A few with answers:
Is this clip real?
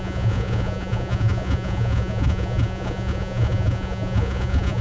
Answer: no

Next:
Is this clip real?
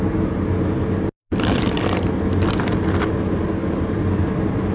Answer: yes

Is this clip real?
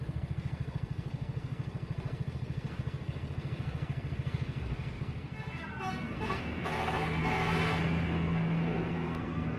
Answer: no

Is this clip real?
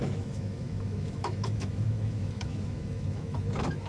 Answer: no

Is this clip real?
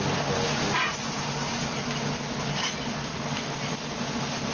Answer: yes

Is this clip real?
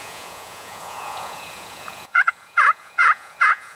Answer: no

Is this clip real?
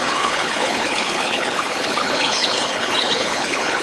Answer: no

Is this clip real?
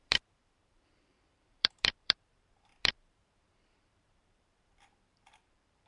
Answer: no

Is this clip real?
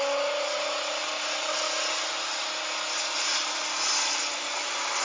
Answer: yes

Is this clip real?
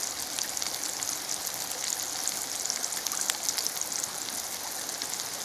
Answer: yes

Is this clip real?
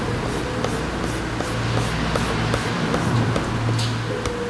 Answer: yes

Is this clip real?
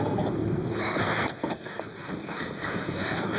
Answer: no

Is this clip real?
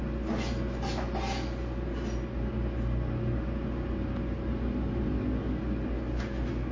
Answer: yes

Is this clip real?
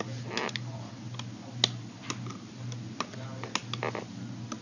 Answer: yes